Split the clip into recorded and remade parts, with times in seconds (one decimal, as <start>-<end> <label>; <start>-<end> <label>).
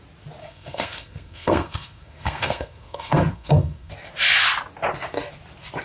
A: 0.0-0.4 recorded; 0.4-3.9 remade; 3.9-5.8 recorded